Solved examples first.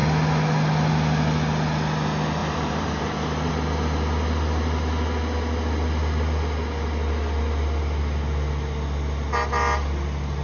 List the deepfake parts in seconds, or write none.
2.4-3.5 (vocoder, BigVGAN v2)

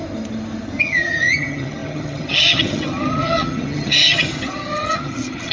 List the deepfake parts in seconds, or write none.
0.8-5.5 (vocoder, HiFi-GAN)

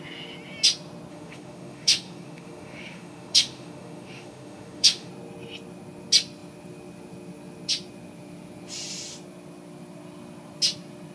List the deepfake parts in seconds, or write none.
1.1-5.1 (autoencoder, DAC-VAE)